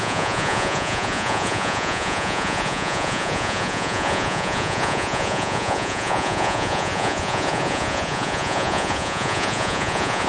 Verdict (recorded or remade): remade